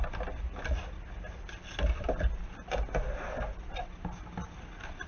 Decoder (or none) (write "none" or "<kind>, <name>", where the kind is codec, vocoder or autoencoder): none